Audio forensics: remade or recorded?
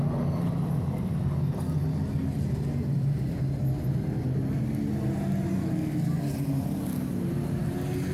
recorded